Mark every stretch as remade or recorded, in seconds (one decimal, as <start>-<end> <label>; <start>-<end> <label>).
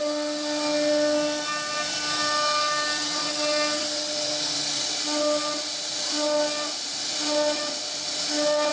0.0-8.7 recorded